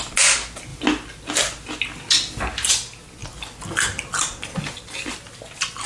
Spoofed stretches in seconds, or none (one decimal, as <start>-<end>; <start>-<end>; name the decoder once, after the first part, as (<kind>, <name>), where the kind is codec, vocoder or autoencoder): none